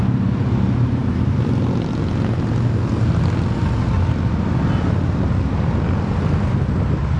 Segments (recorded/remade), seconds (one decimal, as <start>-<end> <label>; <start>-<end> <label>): 0.0-7.2 recorded